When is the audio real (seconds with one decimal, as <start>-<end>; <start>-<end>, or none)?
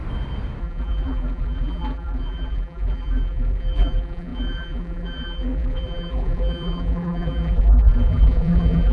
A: 0.0-0.6